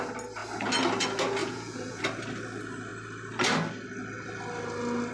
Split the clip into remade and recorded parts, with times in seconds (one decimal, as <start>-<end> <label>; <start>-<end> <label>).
0.0-1.4 recorded; 1.4-2.0 remade; 2.0-5.1 recorded